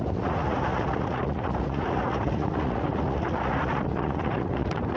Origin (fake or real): fake